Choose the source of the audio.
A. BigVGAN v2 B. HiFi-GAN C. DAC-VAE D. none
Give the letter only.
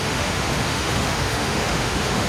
C